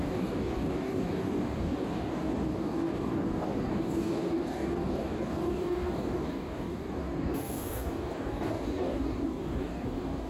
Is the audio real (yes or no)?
no